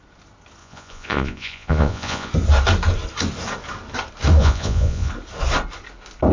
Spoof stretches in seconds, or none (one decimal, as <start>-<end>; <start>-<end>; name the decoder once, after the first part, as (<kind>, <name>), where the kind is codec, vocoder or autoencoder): 0.6-2.3 (vocoder, Vocos); 4.4-5.1

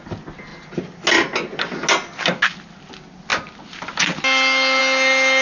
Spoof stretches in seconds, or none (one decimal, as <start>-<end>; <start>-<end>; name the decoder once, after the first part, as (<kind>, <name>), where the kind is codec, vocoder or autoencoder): none

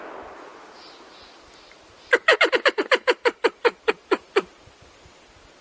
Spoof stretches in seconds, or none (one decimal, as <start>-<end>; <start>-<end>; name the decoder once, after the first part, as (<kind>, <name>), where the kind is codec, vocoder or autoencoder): none

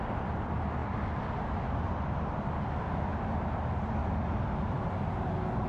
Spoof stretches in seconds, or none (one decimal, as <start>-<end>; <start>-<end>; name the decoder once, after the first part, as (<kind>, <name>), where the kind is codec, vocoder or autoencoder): none

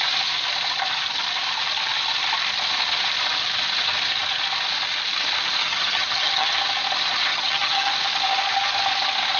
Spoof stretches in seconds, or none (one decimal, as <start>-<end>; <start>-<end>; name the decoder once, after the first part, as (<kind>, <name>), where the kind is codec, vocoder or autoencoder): 5.6-6.5 (vocoder, HiFi-GAN); 7.3-7.9

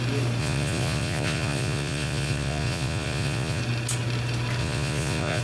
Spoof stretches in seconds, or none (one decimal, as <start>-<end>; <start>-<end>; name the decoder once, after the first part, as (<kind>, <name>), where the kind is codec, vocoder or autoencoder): 0.4-3.6 (vocoder, Vocos); 4.6-5.4

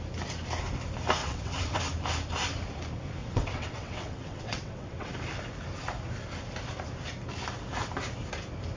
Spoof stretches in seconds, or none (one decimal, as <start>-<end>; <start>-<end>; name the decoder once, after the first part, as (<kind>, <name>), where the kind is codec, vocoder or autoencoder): 1.2-1.8 (vocoder, WaveNeXt); 3.2-5.1

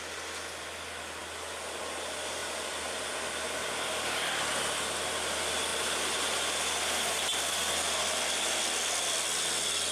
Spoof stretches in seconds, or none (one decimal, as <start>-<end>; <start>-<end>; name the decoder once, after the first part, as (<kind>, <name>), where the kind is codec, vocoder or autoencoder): none